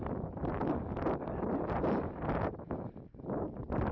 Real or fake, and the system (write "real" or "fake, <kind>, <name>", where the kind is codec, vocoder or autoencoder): real